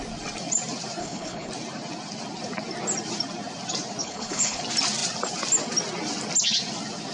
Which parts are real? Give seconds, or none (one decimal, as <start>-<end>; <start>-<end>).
0.0-1.0; 1.5-4.0; 4.6-7.1